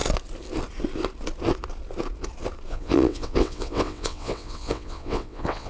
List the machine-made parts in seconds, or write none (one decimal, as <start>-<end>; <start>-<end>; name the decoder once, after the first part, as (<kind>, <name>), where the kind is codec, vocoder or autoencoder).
2.7-5.7 (vocoder, WaveNeXt)